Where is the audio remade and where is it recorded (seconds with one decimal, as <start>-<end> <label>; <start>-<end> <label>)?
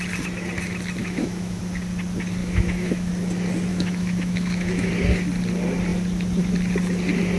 0.0-1.0 recorded; 1.0-1.6 remade; 1.6-2.4 recorded; 2.4-3.1 remade; 3.1-3.7 recorded; 3.7-4.9 remade; 4.9-7.4 recorded